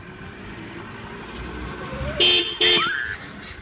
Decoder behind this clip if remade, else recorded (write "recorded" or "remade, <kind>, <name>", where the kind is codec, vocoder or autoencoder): recorded